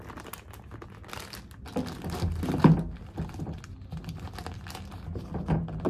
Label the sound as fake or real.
real